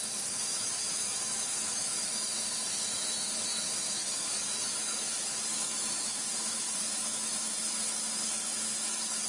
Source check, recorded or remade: remade